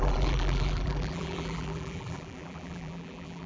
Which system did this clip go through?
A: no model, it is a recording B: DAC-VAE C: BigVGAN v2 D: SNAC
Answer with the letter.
C